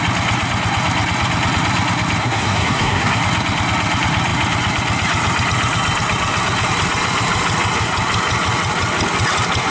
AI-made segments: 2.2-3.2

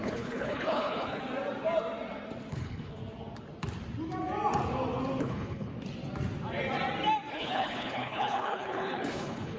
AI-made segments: 0.0-1.2; 2.5-3.0; 5.2-5.7; 7.3-9.6

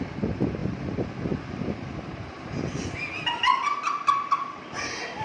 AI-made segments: none

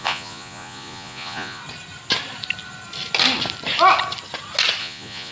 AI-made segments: 0.0-1.6; 4.8-5.3